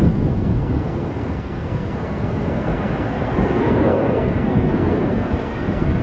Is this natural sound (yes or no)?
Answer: no